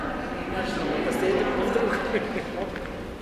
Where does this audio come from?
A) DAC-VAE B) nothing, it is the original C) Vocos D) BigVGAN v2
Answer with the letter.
B